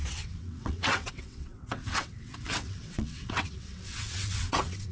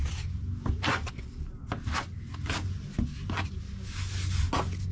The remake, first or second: first